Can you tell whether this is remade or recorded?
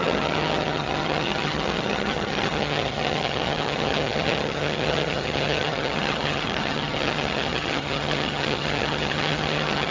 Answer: remade